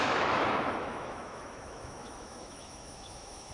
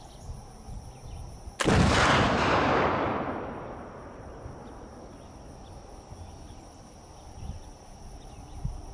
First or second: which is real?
second